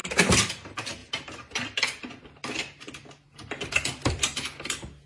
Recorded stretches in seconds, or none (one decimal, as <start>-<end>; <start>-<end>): 0.0-5.1